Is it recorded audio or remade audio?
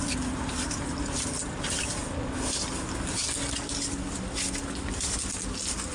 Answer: recorded